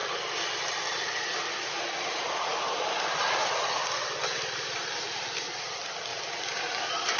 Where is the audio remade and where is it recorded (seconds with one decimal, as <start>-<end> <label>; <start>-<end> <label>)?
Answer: 0.0-7.2 remade